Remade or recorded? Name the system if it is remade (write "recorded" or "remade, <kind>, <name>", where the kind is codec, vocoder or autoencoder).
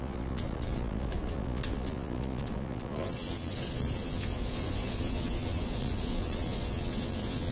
remade, vocoder, Vocos